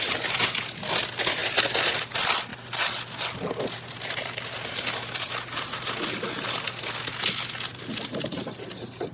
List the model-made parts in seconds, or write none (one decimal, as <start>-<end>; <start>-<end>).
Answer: none